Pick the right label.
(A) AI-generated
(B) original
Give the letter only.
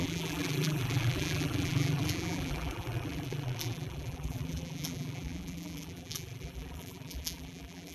A